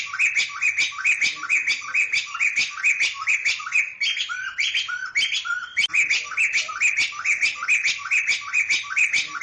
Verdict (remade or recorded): recorded